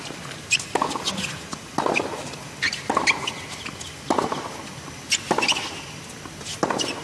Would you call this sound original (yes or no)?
yes